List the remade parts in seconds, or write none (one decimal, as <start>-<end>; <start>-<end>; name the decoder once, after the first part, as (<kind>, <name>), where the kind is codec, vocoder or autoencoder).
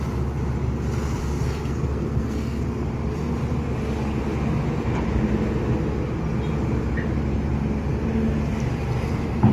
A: 1.2-2.9 (codec, SNAC)